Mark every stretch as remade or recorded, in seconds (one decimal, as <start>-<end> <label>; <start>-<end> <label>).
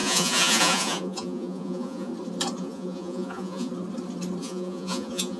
0.0-2.1 remade; 2.1-2.6 recorded; 2.6-3.7 remade; 3.7-4.4 recorded; 4.4-5.4 remade